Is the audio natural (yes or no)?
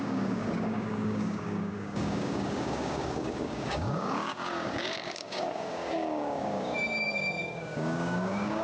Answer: no